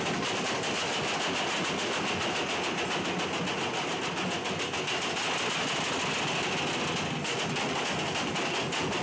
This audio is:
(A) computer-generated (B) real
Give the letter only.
B